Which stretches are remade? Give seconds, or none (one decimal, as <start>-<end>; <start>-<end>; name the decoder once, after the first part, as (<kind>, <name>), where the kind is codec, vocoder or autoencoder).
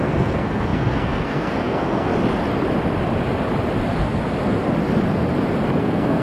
0.0-2.1 (codec, SNAC); 5.8-6.2